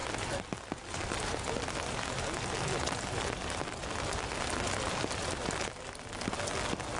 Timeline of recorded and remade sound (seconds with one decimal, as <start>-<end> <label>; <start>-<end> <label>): 0.0-7.0 recorded